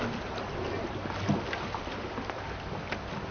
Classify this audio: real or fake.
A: real